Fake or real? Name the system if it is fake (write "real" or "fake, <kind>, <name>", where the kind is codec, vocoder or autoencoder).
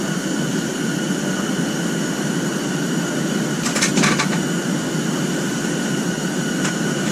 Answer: real